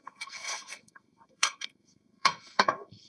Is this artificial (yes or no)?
yes